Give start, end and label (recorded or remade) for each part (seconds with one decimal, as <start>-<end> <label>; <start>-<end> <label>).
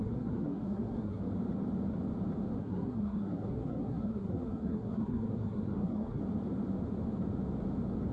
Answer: 0.0-1.2 remade; 1.2-2.6 recorded; 2.6-6.2 remade; 6.2-8.1 recorded